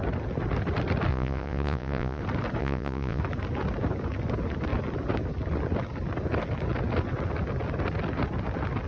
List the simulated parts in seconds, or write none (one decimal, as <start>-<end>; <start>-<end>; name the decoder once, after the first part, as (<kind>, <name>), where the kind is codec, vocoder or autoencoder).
1.1-2.2 (vocoder, Vocos); 2.6-3.2